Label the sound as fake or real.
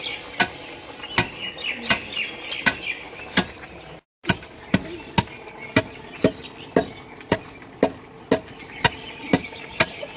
real